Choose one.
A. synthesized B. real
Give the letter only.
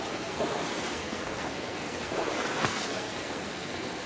A